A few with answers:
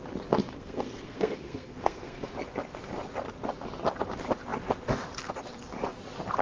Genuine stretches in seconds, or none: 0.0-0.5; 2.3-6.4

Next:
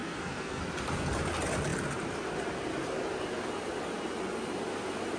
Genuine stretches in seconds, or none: 0.6-5.2